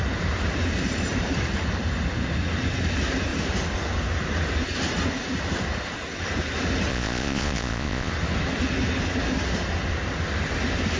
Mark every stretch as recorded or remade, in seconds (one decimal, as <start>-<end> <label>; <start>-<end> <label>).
0.0-6.9 recorded; 6.9-8.1 remade; 8.1-11.0 recorded